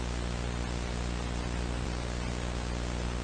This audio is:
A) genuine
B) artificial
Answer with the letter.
A